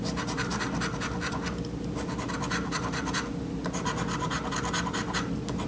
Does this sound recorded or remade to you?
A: recorded